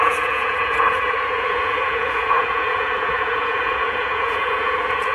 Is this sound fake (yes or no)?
yes